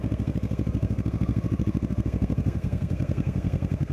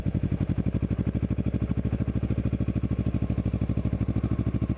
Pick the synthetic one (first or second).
first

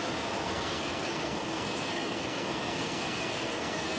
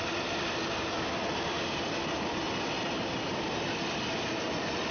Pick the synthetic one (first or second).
first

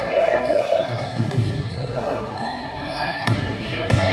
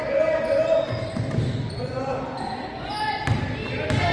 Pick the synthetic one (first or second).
first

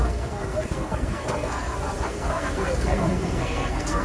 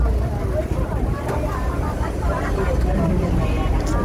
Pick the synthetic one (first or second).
first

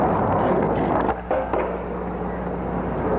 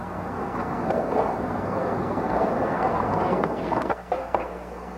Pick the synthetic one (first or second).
second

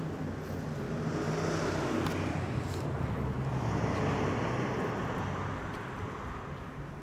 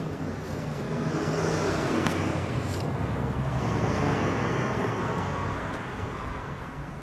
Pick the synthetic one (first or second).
second